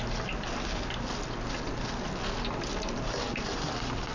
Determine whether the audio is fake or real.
real